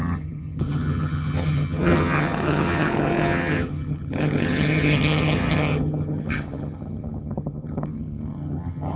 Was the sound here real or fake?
fake